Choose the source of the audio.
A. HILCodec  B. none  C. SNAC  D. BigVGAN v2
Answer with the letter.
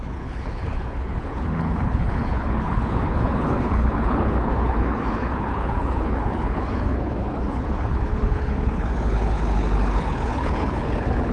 A